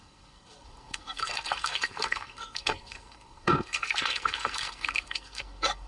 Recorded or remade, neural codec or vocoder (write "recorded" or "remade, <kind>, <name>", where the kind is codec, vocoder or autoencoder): remade, codec, SNAC